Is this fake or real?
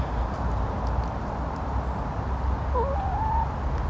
real